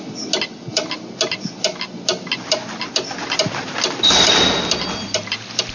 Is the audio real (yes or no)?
yes